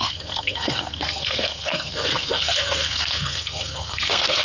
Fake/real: fake